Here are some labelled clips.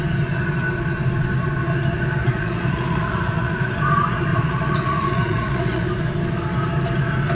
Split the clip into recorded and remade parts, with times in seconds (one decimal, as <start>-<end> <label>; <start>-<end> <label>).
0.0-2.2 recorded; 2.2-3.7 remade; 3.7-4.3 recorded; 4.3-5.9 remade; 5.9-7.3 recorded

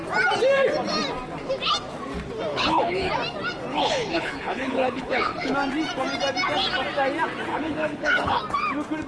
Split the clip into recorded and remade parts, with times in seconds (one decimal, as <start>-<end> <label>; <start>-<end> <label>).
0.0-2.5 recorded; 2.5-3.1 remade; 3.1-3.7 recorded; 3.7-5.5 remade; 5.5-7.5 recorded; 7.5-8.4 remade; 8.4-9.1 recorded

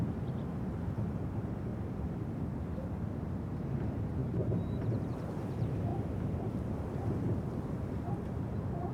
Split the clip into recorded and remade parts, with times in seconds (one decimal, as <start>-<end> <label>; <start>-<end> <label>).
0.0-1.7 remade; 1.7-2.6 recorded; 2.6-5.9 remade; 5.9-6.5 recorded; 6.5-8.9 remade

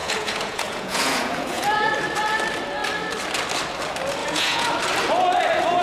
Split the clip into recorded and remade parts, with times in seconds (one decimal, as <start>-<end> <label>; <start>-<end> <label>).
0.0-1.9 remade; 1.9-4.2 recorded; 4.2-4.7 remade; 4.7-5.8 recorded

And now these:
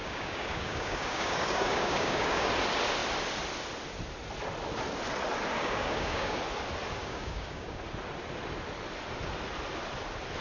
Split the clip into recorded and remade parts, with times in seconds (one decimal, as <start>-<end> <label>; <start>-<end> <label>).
0.0-2.5 remade; 2.5-5.6 recorded; 5.6-6.4 remade; 6.4-7.0 recorded; 7.0-7.8 remade; 7.8-10.4 recorded